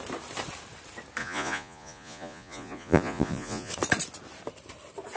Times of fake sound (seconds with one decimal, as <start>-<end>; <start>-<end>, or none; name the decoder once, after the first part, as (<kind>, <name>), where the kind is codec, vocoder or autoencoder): 1.2-3.7 (vocoder, Vocos)